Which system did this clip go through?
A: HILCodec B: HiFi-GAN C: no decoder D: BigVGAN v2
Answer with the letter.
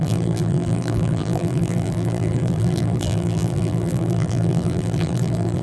D